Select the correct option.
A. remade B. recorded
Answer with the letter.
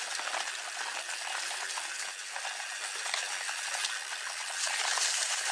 B